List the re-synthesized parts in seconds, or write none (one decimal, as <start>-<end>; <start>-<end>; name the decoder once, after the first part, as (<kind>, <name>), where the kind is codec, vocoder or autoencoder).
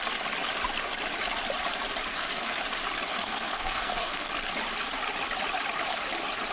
2.1-2.6 (codec, SNAC); 3.1-4.3